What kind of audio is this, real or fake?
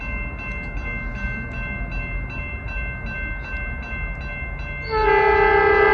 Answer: real